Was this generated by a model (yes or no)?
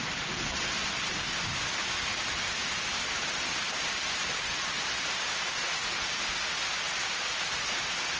no